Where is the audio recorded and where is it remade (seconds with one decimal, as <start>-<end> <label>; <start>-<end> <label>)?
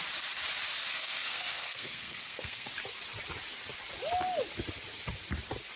0.0-0.8 recorded; 0.8-2.7 remade; 2.7-5.8 recorded